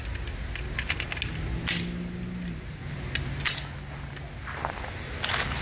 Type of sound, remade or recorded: recorded